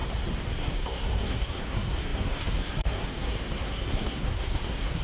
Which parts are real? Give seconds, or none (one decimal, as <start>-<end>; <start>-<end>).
0.0-0.6